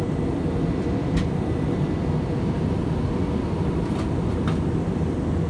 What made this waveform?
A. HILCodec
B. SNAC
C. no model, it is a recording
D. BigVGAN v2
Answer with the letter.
C